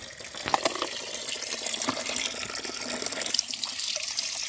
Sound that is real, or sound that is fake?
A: real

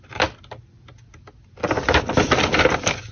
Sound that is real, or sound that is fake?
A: real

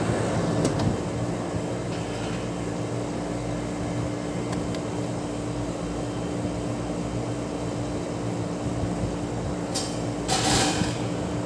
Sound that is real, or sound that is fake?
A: real